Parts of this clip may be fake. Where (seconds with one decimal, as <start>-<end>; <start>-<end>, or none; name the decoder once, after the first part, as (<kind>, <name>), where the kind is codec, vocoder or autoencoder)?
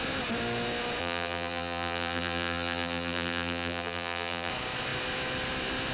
1.0-4.5 (vocoder, BigVGAN v2)